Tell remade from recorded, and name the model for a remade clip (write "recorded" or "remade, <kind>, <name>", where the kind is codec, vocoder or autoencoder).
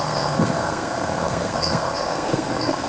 remade, codec, SNAC